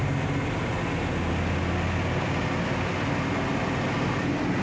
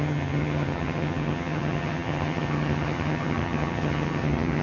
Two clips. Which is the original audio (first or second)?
first